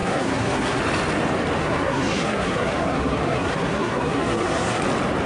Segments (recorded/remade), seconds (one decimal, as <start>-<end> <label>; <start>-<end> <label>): 0.0-0.8 remade; 0.8-1.6 recorded; 1.6-4.8 remade; 4.8-5.3 recorded